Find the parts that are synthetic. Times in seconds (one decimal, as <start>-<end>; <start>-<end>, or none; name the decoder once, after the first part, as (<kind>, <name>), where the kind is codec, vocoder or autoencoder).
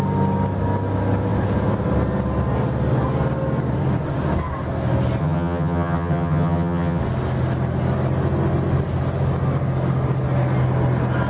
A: 5.2-7.0 (vocoder, HiFi-GAN)